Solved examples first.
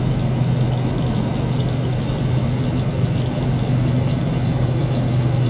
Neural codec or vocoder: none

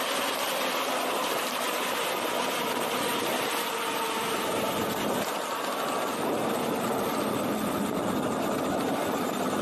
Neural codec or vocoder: none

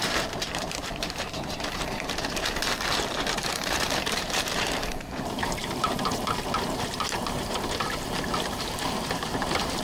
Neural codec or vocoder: vocoder, BigVGAN v2